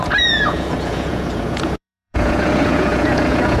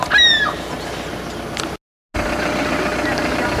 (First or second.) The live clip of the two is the second